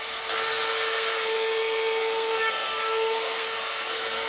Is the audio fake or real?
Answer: fake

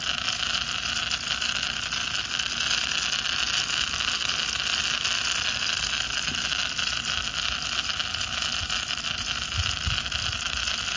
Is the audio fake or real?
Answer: real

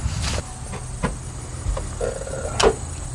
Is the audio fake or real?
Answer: real